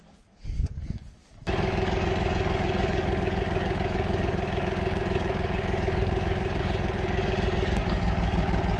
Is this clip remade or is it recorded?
remade